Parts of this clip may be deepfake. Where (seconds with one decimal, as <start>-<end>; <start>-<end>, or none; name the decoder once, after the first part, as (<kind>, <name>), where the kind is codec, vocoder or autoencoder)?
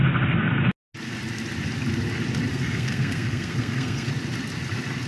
2.5-4.1 (codec, SNAC)